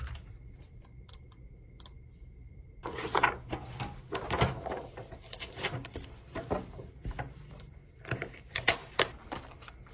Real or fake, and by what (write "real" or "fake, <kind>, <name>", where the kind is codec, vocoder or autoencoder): fake, vocoder, BigVGAN v2